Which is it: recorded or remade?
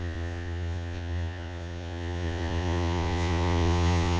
remade